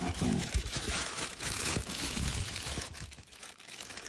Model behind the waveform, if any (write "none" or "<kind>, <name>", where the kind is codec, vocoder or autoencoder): autoencoder, DAC-VAE